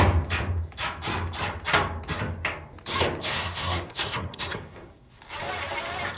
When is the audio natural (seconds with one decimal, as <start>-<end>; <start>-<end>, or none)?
0.0-3.2; 5.2-6.2